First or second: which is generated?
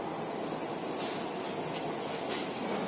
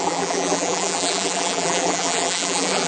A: second